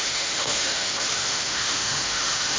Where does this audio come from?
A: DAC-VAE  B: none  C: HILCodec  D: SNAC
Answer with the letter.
A